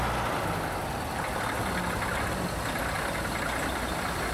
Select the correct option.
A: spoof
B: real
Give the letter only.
B